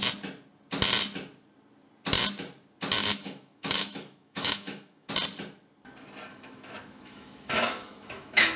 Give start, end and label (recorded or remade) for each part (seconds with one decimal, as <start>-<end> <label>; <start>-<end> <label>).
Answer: 0.0-3.0 recorded; 3.0-5.1 remade; 5.1-6.3 recorded; 6.3-8.6 remade